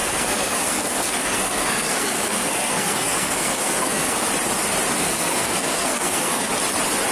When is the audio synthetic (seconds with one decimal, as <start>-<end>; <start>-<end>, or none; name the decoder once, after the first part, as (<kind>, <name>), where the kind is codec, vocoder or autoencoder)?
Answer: 0.0-4.3 (codec, SNAC); 5.0-6.5